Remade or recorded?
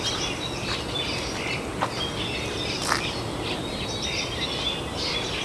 recorded